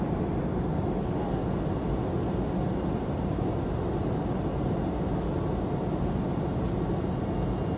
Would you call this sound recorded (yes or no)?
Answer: yes